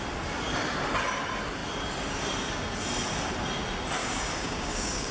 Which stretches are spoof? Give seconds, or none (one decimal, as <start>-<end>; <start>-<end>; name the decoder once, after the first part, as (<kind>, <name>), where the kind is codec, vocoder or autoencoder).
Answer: 4.0-5.1 (codec, DAC)